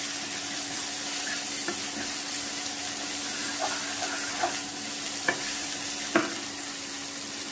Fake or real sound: real